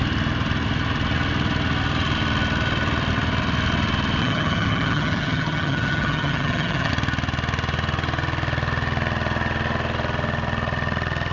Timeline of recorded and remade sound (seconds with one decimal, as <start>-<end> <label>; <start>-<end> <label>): 0.0-4.2 recorded; 4.2-6.9 remade; 6.9-11.3 recorded